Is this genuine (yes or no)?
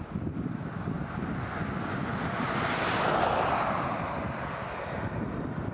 yes